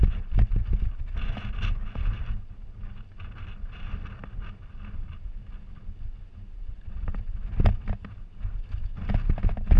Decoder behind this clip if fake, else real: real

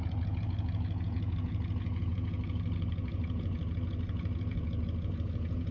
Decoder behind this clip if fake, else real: fake, vocoder, Vocos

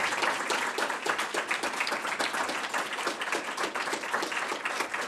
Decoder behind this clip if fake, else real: real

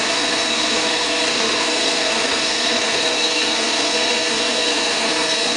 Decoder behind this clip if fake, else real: fake, codec, SNAC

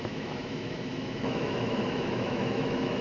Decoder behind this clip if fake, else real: fake, autoencoder, DAC-VAE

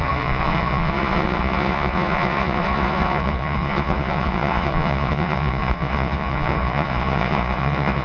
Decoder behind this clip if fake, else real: fake, vocoder, Vocos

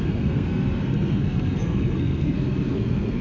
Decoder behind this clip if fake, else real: fake, codec, SNAC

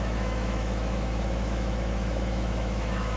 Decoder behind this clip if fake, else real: fake, autoencoder, DAC-VAE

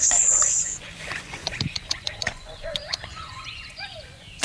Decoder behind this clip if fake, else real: fake, vocoder, Vocos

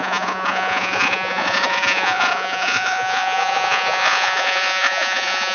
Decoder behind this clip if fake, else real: fake, vocoder, Vocos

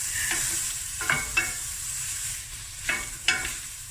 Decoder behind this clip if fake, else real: fake, vocoder, BigVGAN v2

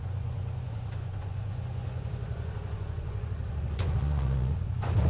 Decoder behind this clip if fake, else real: fake, vocoder, Vocos